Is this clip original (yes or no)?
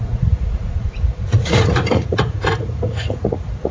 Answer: no